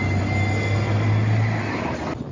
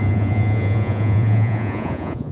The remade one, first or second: second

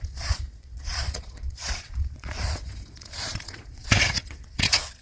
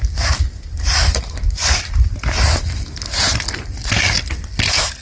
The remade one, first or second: first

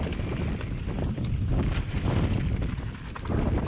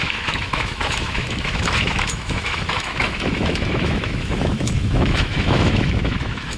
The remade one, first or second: second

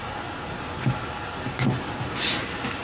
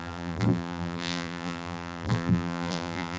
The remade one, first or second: second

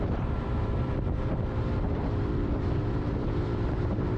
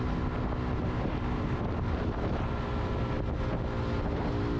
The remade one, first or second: first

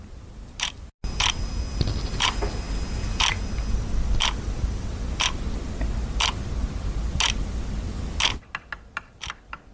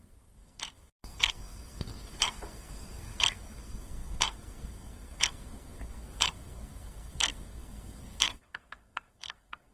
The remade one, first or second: second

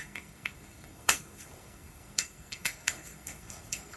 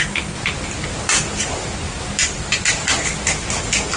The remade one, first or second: first